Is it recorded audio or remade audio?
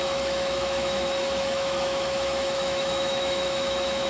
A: remade